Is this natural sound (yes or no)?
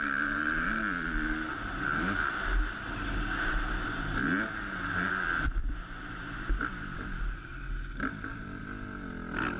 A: yes